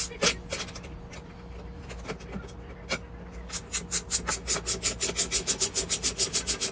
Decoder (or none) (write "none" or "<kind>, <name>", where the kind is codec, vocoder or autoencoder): none